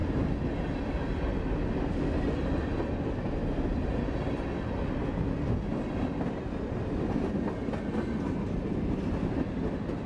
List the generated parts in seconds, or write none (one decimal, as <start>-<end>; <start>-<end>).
none